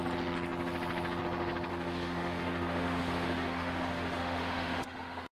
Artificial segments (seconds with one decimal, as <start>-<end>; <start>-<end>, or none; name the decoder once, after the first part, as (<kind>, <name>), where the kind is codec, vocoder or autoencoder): 1.7-5.3 (autoencoder, DAC-VAE)